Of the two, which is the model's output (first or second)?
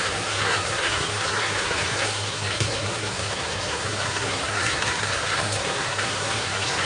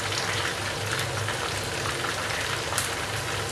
first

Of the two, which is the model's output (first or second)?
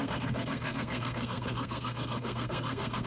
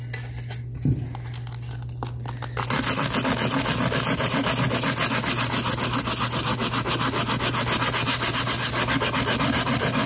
first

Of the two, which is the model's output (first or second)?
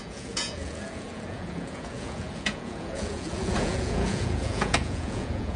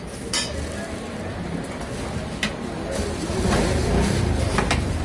first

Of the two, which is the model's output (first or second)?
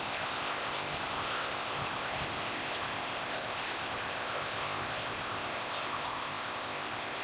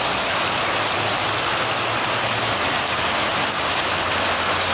first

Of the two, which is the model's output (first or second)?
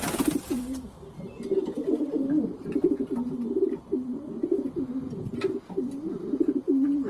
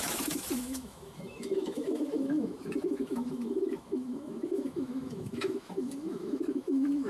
second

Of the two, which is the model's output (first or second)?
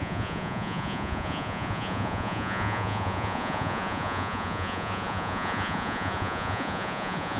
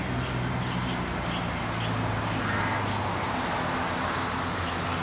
first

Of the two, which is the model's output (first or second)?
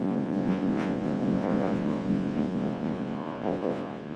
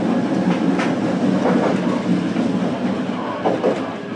first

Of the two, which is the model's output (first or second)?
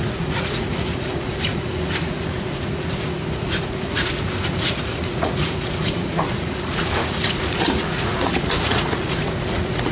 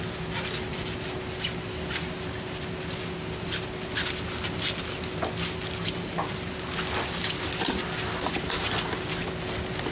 first